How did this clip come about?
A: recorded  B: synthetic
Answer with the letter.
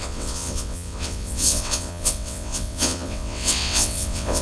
B